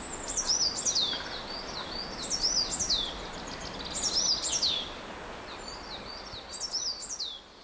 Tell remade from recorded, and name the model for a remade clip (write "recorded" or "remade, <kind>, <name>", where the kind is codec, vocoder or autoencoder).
recorded